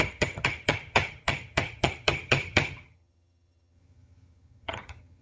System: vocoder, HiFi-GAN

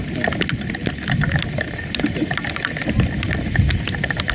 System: none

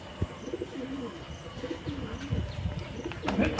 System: none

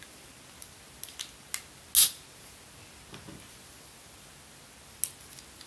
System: none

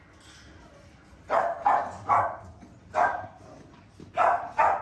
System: none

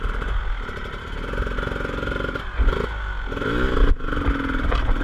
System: none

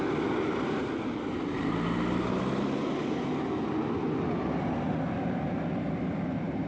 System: none